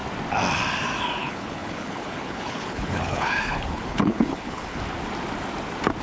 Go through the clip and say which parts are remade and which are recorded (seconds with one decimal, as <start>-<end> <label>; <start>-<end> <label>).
0.0-1.2 recorded; 1.2-4.8 remade; 4.8-6.0 recorded